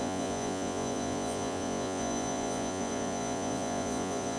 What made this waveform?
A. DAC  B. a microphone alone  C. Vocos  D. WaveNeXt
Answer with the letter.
C